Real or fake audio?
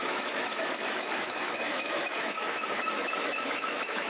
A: fake